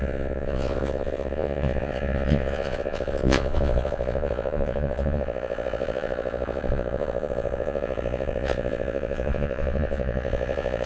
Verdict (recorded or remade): remade